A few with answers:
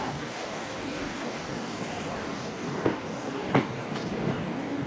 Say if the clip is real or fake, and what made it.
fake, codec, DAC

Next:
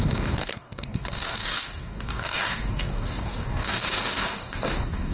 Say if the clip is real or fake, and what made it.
fake, codec, DAC